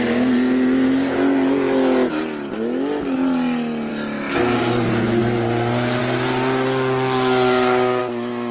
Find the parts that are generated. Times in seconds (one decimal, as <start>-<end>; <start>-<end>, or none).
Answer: none